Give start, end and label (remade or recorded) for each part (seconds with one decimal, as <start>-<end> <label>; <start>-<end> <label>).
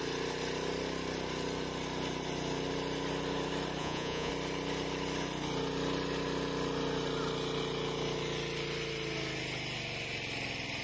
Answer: 0.0-3.8 recorded; 3.8-4.3 remade; 4.3-10.8 recorded